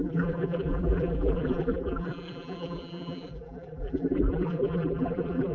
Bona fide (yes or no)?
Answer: no